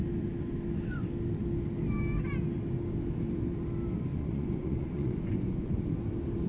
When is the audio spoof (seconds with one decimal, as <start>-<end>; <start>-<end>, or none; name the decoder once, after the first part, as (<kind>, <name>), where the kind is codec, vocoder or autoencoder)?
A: 4.1-5.8 (vocoder, Vocos)

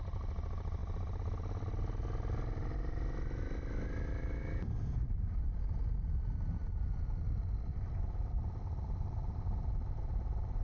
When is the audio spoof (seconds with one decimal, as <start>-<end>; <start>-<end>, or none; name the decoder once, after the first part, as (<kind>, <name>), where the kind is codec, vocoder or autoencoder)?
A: none

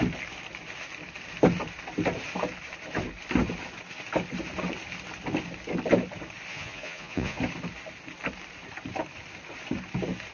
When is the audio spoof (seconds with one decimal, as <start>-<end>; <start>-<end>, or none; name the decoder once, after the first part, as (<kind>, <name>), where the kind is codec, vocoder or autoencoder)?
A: 6.5-7.4 (vocoder, Vocos)

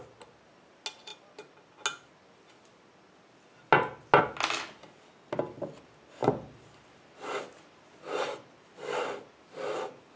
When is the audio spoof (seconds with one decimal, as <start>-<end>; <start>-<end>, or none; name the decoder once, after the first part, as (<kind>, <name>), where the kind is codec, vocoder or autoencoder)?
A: none